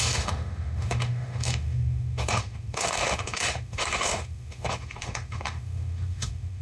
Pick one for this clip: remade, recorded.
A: remade